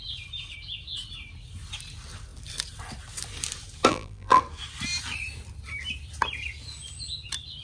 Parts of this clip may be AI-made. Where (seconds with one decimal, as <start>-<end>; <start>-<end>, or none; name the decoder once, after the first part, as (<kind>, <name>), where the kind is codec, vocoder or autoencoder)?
3.9-4.4 (vocoder, BigVGAN v2)